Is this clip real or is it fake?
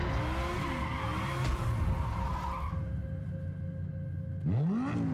real